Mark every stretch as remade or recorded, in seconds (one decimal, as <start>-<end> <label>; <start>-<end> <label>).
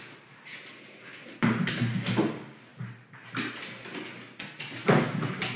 0.0-5.6 recorded